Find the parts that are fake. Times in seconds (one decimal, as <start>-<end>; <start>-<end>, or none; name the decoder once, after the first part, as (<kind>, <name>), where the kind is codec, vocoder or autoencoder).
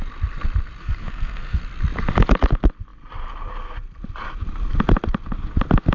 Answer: 0.8-1.6 (codec, SNAC)